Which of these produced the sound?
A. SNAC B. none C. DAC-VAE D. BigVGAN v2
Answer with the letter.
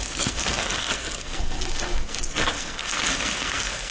A